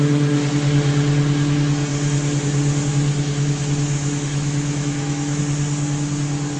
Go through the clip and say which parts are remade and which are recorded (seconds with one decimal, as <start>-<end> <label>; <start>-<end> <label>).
0.0-4.0 recorded; 4.0-5.4 remade; 5.4-6.6 recorded